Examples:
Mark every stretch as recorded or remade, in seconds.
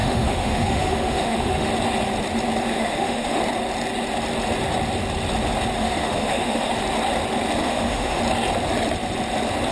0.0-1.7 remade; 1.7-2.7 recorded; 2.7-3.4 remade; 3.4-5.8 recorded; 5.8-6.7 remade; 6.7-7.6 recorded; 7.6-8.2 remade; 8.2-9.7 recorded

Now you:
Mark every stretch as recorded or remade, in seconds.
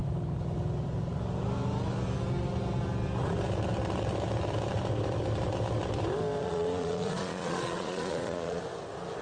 0.0-6.4 recorded; 6.4-8.6 remade; 8.6-9.2 recorded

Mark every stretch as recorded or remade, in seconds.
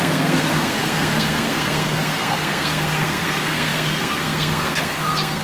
0.0-5.4 remade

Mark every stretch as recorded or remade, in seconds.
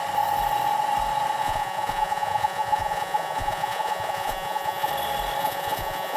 0.0-1.4 recorded; 1.4-4.9 remade; 4.9-5.4 recorded; 5.4-6.2 remade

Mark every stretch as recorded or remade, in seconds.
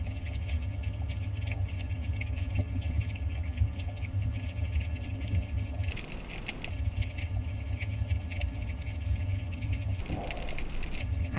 0.0-5.9 remade; 5.9-6.7 recorded; 6.7-10.0 remade; 10.0-11.0 recorded; 11.0-11.4 remade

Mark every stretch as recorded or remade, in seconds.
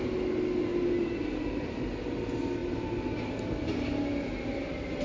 0.0-0.7 recorded; 0.7-1.9 remade; 1.9-5.0 recorded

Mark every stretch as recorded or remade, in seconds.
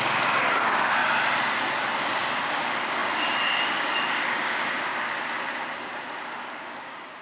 0.0-1.0 remade; 1.0-2.0 recorded; 2.0-4.9 remade; 4.9-6.6 recorded; 6.6-7.2 remade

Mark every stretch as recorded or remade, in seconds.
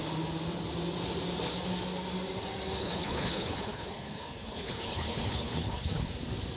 0.0-2.8 recorded; 2.8-6.1 remade; 6.1-6.6 recorded